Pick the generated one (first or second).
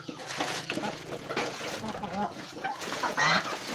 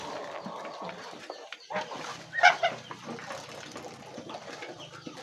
first